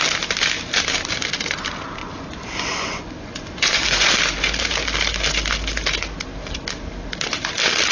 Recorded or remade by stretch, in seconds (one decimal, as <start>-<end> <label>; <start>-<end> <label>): 0.0-2.0 recorded; 2.0-4.1 remade; 4.1-7.9 recorded